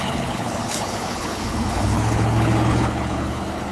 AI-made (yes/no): yes